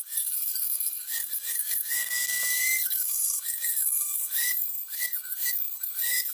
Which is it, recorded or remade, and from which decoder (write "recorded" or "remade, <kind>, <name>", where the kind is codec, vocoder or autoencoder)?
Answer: remade, codec, SNAC